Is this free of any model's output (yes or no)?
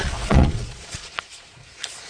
no